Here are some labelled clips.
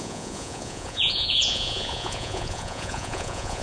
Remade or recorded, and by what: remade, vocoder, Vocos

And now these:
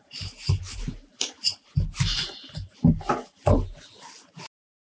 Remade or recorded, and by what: recorded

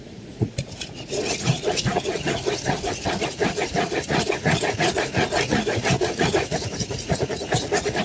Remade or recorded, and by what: remade, vocoder, Vocos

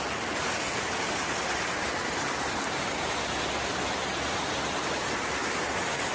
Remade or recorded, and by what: recorded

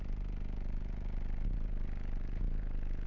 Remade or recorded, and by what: remade, vocoder, Vocos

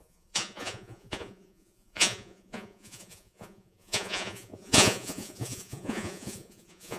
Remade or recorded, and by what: remade, vocoder, Vocos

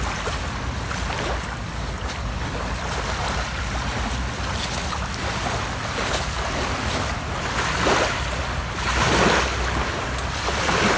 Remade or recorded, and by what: recorded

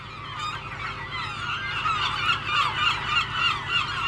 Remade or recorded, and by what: recorded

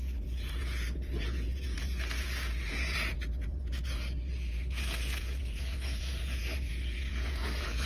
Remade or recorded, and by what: remade, vocoder, Vocos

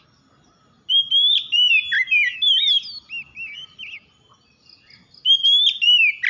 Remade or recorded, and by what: recorded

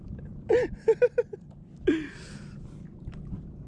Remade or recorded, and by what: recorded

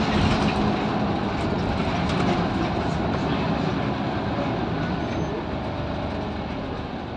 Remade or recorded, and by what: recorded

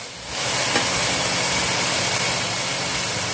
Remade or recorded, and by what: recorded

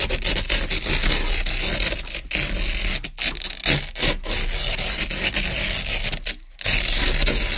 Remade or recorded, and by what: recorded